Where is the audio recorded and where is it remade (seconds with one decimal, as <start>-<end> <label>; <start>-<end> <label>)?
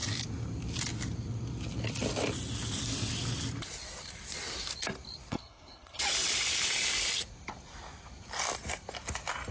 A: 0.0-5.3 recorded; 5.3-6.0 remade; 6.0-9.5 recorded